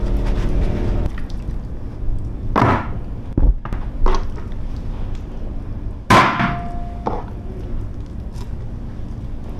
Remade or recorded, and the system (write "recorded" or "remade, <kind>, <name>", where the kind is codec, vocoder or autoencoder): recorded